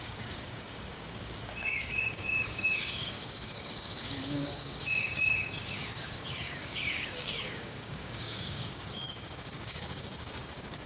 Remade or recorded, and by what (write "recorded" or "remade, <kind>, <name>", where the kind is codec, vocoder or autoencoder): remade, codec, DAC